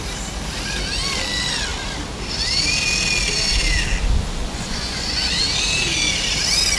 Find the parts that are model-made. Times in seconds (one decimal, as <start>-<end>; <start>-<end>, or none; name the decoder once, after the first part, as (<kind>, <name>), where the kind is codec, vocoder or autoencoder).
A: 4.4-5.4 (vocoder, Vocos)